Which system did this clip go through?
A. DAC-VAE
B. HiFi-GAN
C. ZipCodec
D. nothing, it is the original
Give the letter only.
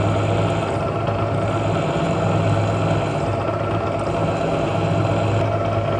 D